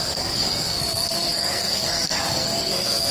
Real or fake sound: fake